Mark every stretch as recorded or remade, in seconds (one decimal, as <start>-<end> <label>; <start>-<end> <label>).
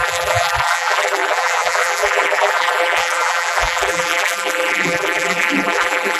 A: 0.0-6.2 remade